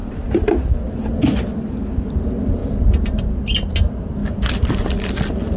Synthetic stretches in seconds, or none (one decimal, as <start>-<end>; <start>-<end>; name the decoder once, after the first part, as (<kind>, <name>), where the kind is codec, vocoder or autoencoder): 0.0-0.7 (vocoder, BigVGAN v2); 4.2-5.1